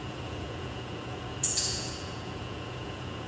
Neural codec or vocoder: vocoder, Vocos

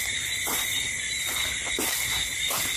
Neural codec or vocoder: none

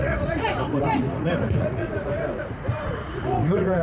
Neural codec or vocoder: vocoder, Vocos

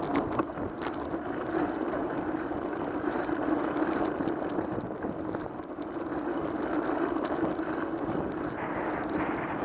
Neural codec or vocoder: none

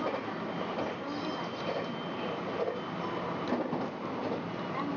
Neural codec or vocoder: none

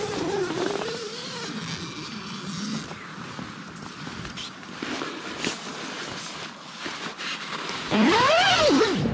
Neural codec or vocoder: none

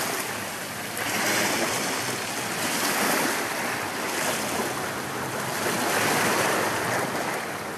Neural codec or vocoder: none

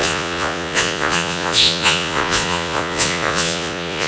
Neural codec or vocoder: vocoder, Vocos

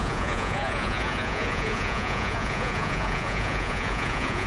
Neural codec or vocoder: vocoder, Vocos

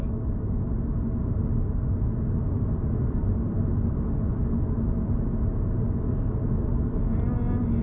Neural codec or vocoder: none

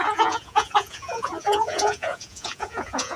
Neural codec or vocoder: vocoder, Vocos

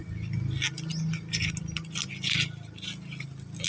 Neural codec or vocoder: none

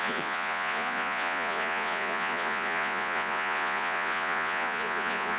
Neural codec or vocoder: vocoder, Vocos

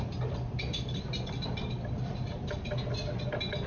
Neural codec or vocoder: none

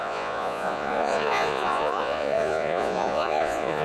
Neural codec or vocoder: vocoder, Vocos